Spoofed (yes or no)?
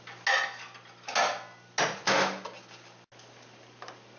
no